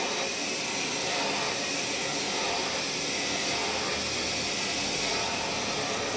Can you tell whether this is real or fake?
real